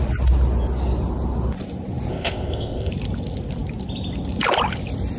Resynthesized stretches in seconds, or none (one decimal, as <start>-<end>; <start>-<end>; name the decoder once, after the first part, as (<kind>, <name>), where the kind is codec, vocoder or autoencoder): 2.1-2.9 (codec, ZipCodec)